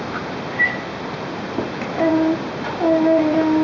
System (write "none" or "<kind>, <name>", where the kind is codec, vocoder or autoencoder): none